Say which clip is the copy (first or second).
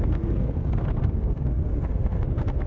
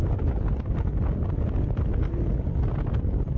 first